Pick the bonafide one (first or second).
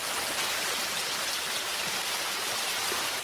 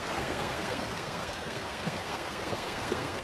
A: first